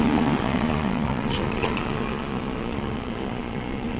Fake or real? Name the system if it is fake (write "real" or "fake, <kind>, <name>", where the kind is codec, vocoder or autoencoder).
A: fake, vocoder, Vocos